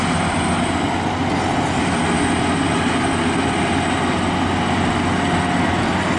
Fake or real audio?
real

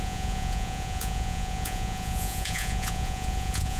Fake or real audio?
fake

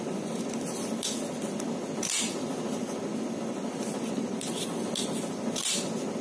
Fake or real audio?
real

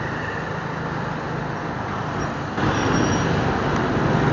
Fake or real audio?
real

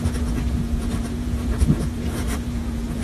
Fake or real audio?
fake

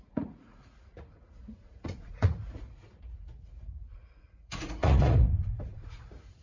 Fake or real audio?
fake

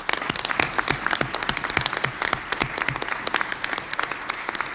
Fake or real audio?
real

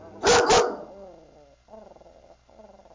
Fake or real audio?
real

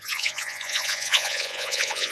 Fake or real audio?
fake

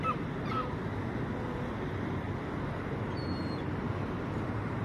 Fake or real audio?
real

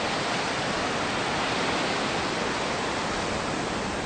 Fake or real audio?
real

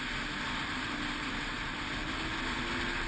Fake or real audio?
real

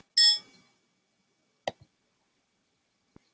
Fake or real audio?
real